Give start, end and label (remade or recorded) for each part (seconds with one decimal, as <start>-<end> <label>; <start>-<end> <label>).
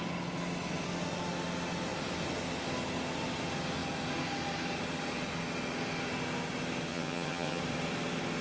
0.0-6.9 recorded; 6.9-7.6 remade; 7.6-8.4 recorded